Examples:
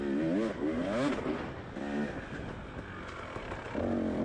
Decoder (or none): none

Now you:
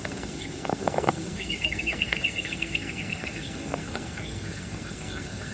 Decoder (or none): codec, SNAC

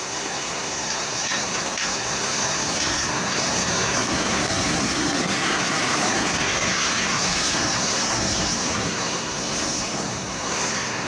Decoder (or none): codec, SNAC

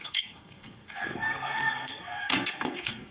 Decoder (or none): codec, SNAC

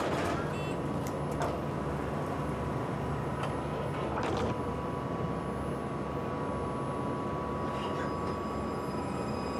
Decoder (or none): none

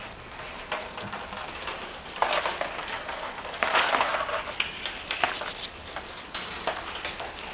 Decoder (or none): none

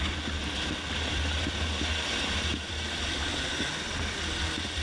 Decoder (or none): none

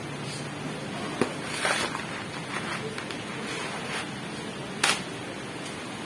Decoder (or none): none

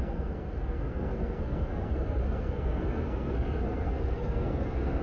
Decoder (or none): codec, SNAC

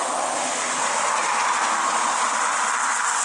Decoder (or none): none